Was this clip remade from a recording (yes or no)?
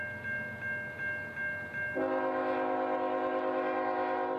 no